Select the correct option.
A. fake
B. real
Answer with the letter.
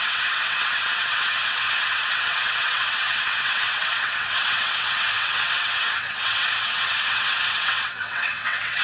A